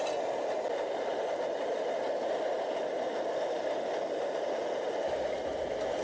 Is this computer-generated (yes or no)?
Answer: no